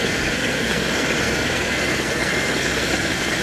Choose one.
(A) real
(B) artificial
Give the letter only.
B